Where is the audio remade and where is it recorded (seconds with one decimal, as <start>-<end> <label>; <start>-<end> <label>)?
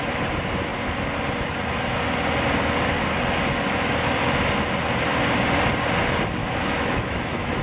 0.0-6.4 recorded; 6.4-7.6 remade